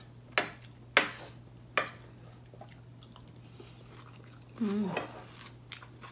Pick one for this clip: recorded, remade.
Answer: recorded